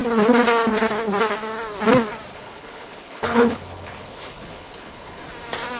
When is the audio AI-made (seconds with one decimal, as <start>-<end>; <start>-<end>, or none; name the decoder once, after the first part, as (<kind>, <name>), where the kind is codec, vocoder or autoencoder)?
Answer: 2.3-5.2 (codec, HILCodec)